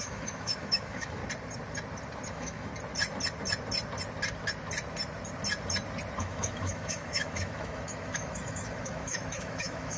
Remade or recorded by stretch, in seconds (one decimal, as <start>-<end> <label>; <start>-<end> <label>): 0.0-1.2 remade; 1.2-2.3 recorded; 2.3-2.7 remade; 2.7-6.2 recorded; 6.2-10.0 remade